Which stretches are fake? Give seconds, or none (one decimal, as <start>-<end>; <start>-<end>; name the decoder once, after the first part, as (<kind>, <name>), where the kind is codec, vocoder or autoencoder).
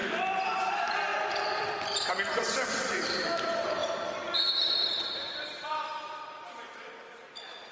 0.0-3.8 (vocoder, BigVGAN v2); 4.4-7.7